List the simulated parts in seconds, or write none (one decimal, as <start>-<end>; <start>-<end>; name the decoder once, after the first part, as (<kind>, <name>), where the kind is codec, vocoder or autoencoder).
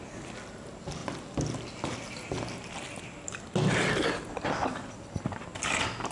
1.0-1.9 (vocoder, BigVGAN v2)